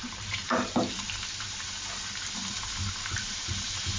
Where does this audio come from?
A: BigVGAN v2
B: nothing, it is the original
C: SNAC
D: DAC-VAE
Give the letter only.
A